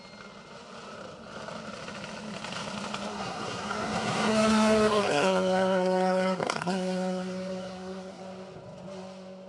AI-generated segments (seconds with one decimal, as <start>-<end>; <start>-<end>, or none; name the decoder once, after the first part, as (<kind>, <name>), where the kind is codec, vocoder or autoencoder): 3.1-8.2 (codec, SNAC)